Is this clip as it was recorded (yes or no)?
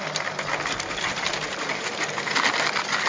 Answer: yes